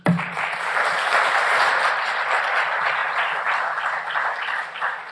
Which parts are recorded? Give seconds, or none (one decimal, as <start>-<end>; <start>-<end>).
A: 0.0-1.1; 2.4-3.0; 3.9-5.1

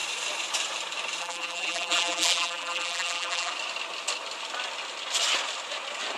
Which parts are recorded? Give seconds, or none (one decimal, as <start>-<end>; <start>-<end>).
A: 0.0-1.2; 3.5-6.2

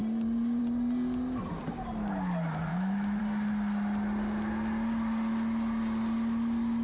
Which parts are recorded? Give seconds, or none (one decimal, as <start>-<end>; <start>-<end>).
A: 0.0-2.7; 3.2-6.8

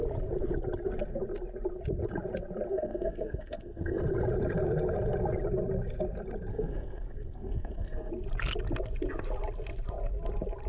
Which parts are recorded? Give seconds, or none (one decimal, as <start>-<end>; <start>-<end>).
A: 0.0-2.7; 4.0-6.5; 8.1-10.7

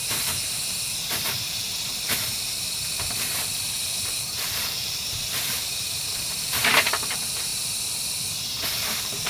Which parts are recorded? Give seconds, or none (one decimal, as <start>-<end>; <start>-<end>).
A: 7.5-8.8

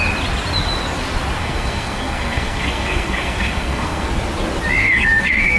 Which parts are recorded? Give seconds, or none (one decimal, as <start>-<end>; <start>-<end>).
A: 0.0-1.4; 4.1-4.8

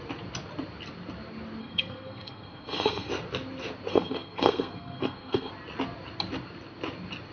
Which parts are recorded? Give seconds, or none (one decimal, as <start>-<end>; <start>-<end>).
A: 0.0-1.6; 3.1-3.9; 5.5-7.3

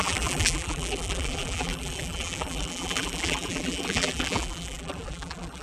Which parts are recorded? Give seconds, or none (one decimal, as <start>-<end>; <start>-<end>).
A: none